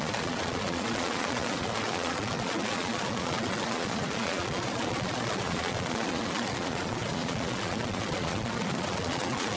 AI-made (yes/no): yes